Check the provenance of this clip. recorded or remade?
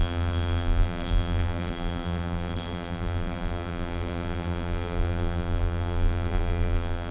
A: remade